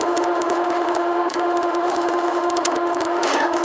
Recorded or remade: remade